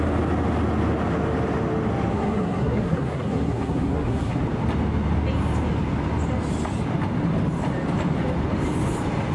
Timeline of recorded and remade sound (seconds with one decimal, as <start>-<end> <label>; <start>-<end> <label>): 0.0-2.1 recorded; 2.1-4.4 remade; 4.4-9.3 recorded